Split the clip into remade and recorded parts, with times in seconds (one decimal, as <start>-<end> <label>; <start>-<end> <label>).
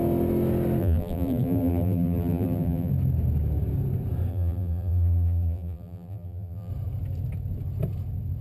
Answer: 0.0-0.8 recorded; 0.8-2.9 remade; 2.9-4.3 recorded; 4.3-6.7 remade; 6.7-8.4 recorded